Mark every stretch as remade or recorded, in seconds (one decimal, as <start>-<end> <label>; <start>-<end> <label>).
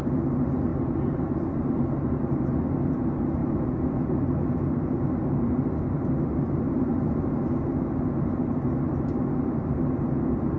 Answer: 0.0-0.7 recorded; 0.7-1.6 remade; 1.6-3.4 recorded; 3.4-4.5 remade; 4.5-10.6 recorded